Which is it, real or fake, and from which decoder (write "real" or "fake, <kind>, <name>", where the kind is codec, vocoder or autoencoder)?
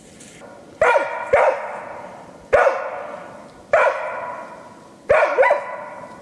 real